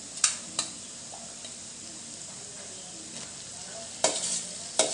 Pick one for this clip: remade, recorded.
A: remade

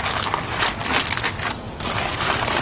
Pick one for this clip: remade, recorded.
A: recorded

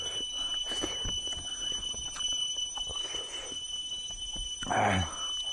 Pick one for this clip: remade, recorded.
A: recorded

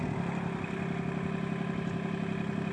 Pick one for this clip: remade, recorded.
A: recorded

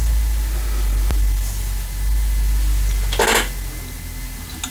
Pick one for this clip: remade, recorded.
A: recorded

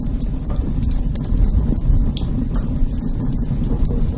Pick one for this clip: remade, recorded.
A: remade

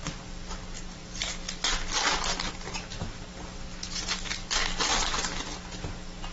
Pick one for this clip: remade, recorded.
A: recorded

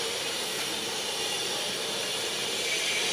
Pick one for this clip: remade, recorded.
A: recorded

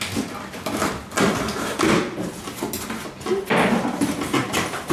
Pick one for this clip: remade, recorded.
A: recorded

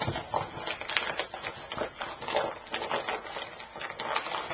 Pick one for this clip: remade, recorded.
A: recorded